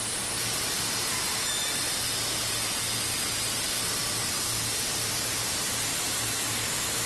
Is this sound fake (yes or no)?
no